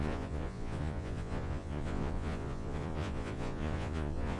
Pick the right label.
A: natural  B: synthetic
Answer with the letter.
B